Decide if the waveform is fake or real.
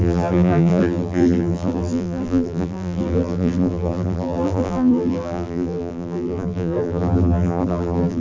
fake